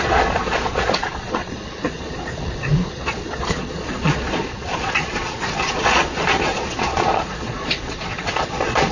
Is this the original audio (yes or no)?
no